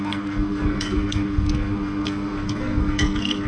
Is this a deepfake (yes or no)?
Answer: yes